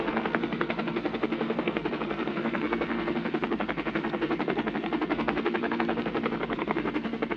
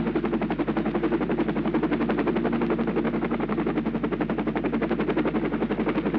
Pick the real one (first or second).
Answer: second